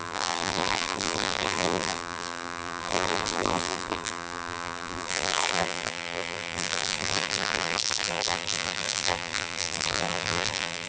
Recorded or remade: remade